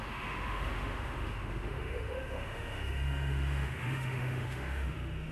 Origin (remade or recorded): remade